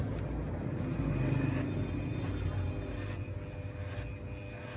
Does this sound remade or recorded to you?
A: recorded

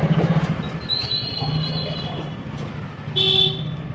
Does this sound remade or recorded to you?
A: recorded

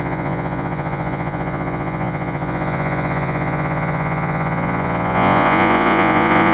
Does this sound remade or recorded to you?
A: remade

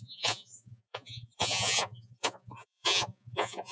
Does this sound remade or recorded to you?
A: remade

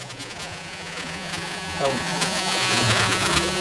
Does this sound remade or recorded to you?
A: remade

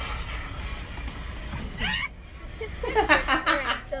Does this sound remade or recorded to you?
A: recorded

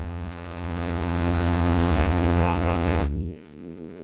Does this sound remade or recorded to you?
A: remade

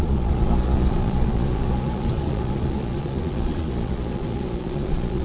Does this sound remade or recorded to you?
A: remade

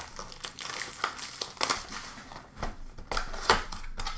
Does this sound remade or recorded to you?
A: recorded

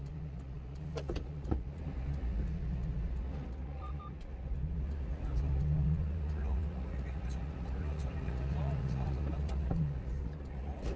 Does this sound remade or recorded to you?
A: remade